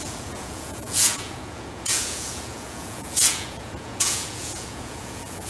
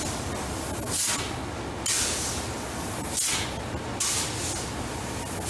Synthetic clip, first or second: first